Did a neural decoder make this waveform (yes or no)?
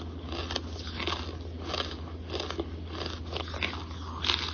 no